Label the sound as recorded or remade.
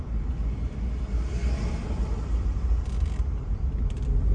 recorded